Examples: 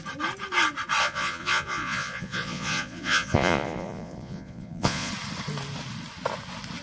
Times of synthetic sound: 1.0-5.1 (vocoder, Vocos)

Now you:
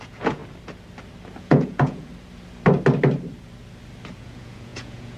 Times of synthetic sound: 0.0-0.4 (vocoder, Vocos); 1.4-2.1; 4.2-5.2

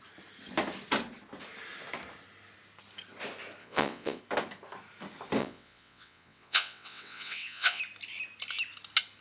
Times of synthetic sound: 3.6-4.2 (vocoder, WaveNeXt); 5.4-7.8